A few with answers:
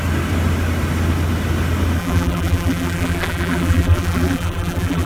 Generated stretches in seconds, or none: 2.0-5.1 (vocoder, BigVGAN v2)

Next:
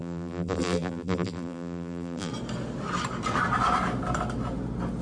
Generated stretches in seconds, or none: 0.0-2.3 (vocoder, BigVGAN v2)

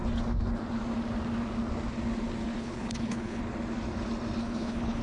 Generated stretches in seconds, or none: 2.6-3.4 (codec, HILCodec); 4.4-5.0